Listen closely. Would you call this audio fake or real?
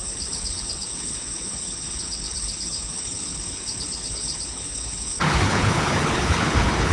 fake